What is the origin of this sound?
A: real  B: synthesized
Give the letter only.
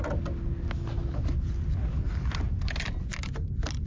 A